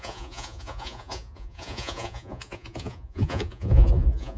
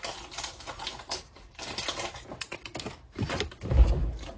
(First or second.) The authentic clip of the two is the second